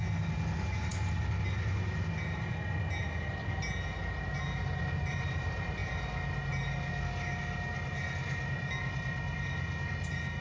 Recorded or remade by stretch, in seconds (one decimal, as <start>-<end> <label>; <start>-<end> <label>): 0.0-10.4 recorded